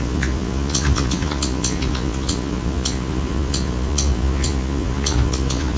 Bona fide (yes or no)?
no